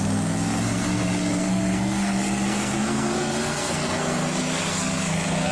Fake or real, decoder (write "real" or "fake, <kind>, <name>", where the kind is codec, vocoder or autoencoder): fake, codec, SNAC